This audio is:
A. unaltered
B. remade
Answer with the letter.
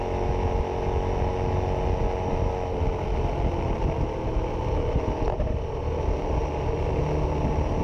A